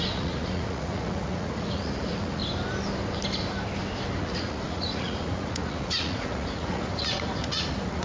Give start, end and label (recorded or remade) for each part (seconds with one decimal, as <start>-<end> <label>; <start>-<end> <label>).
0.0-2.4 remade; 2.4-4.2 recorded; 4.2-8.0 remade